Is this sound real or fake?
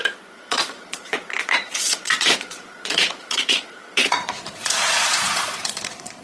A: fake